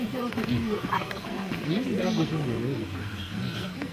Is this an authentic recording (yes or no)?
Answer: no